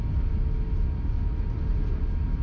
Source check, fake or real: real